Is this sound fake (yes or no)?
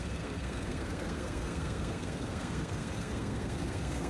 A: yes